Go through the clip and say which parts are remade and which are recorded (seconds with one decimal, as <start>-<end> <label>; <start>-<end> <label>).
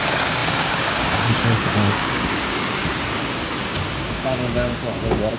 0.0-2.8 remade; 2.8-3.7 recorded; 3.7-5.4 remade